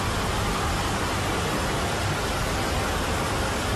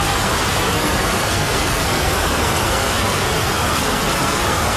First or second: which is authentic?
first